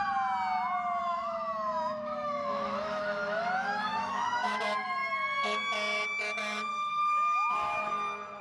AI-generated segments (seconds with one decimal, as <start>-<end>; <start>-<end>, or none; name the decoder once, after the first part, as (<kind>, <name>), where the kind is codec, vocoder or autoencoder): 1.0-4.6 (autoencoder, DAC-VAE); 6.7-7.9